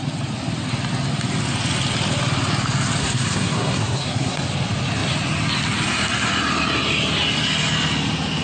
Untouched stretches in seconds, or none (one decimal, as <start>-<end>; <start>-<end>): 0.0-3.0; 4.4-8.4